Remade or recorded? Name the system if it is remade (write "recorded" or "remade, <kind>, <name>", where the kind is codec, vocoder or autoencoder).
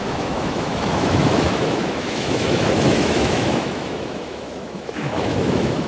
remade, autoencoder, DAC-VAE